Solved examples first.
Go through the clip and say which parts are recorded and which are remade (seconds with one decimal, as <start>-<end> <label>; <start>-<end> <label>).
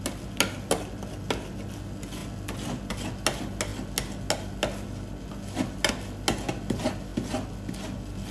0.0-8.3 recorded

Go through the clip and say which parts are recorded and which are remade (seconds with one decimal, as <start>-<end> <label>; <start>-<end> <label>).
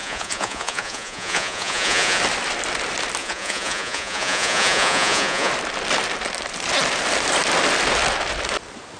0.0-2.2 remade; 2.2-3.2 recorded; 3.2-5.5 remade; 5.5-9.0 recorded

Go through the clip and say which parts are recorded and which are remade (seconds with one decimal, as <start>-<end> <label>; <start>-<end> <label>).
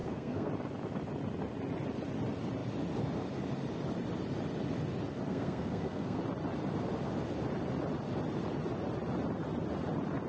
0.0-0.5 remade; 0.5-5.3 recorded; 5.3-6.2 remade; 6.2-10.3 recorded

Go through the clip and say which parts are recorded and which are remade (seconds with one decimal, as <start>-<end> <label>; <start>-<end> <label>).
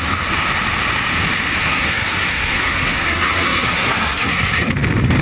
0.0-1.6 recorded; 1.6-4.7 remade; 4.7-5.2 recorded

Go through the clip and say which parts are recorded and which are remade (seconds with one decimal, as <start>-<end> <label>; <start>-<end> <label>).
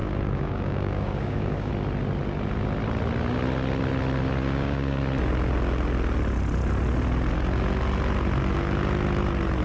0.0-1.7 remade; 1.7-4.4 recorded; 4.4-5.0 remade; 5.0-9.6 recorded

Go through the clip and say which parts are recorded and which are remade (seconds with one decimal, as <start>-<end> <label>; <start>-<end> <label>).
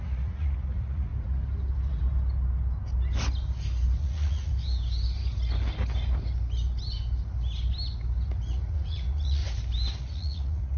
0.0-1.1 remade; 1.1-4.0 recorded; 4.0-4.5 remade; 4.5-8.5 recorded; 8.5-9.4 remade; 9.4-10.0 recorded; 10.0-10.8 remade